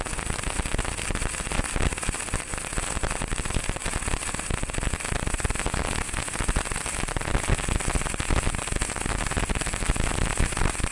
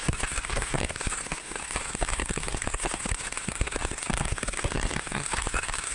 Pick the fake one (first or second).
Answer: second